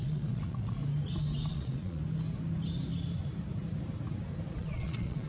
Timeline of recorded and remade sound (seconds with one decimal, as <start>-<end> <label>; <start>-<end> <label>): 0.0-0.8 remade; 0.8-1.5 recorded; 1.5-2.0 remade; 2.0-4.6 recorded; 4.6-5.3 remade